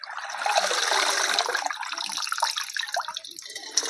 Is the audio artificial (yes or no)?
no